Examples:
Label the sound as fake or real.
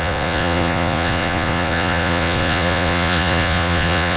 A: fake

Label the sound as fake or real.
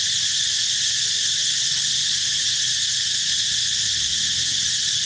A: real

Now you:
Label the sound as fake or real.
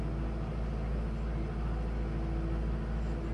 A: real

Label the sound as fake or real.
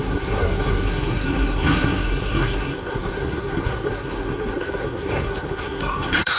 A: fake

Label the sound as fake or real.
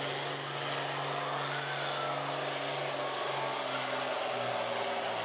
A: real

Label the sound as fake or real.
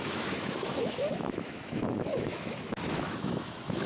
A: fake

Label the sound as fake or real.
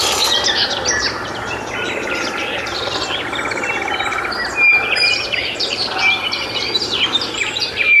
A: fake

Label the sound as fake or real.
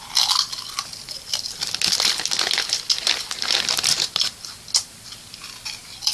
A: real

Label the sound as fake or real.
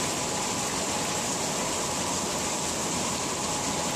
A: real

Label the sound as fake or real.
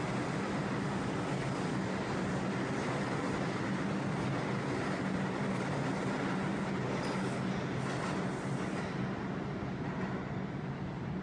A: real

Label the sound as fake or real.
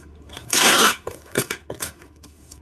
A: fake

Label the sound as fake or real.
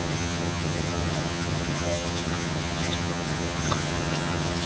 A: fake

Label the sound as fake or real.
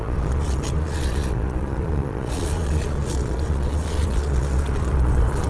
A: fake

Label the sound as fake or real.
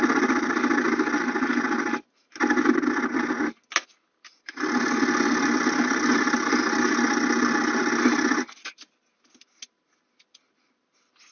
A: real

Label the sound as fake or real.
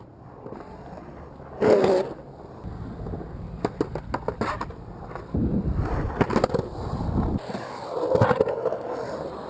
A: real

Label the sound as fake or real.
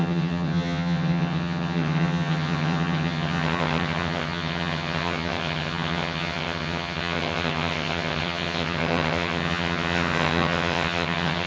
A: fake